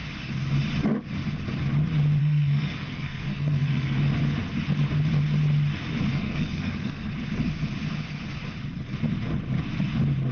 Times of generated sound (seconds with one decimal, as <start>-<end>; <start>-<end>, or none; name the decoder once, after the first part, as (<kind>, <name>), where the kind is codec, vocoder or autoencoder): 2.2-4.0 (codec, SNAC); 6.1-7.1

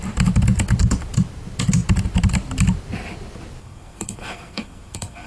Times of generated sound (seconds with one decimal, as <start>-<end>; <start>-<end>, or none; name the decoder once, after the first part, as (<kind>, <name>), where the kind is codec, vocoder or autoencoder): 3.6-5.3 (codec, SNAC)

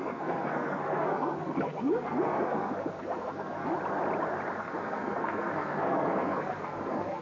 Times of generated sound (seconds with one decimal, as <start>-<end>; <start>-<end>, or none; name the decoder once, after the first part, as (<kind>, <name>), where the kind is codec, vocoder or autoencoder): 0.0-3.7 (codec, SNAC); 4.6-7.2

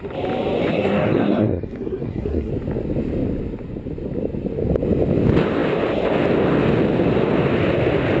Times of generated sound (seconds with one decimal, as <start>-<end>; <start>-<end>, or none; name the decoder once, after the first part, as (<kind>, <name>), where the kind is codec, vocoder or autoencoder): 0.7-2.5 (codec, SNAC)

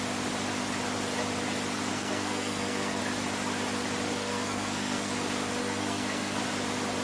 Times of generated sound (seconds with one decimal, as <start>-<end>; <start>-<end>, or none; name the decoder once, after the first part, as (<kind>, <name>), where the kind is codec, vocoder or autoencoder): 1.9-3.0 (codec, SNAC); 4.2-5.1; 5.6-6.4

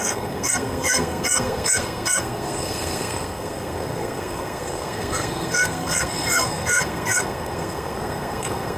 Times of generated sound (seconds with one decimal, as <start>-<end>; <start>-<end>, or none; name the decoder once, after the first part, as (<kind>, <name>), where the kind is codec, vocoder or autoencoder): 0.0-8.8 (codec, SNAC)